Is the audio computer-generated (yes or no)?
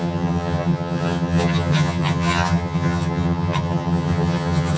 yes